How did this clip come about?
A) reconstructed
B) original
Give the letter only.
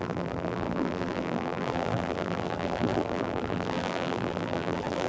A